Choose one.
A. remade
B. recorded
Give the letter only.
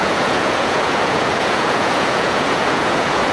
A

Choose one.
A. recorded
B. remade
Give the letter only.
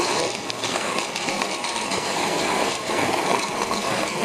B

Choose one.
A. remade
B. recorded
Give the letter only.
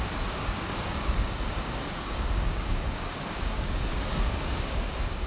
A